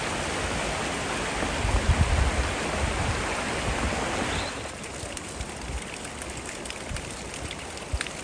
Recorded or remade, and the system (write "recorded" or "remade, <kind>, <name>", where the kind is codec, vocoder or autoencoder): recorded